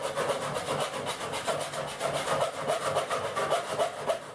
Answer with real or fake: real